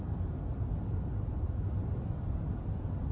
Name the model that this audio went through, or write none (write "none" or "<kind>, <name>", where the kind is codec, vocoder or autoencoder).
none